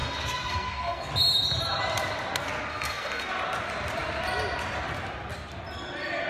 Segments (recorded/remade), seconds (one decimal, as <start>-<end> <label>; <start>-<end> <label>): 0.0-1.1 remade; 1.1-2.7 recorded; 2.7-3.3 remade; 3.3-6.3 recorded